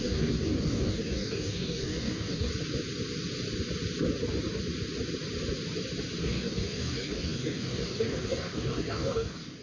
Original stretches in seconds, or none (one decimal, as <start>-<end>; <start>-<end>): 2.5-6.2